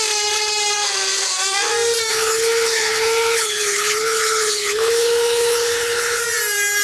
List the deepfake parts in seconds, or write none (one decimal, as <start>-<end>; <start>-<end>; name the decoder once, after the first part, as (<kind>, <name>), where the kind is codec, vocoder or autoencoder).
2.1-6.2 (codec, HILCodec)